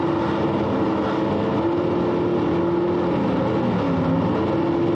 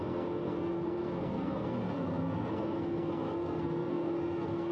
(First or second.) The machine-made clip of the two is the second